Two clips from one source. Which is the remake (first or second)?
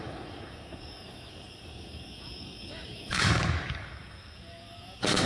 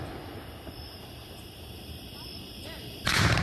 first